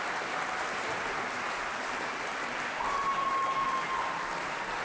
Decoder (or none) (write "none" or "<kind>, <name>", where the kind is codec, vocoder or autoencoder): none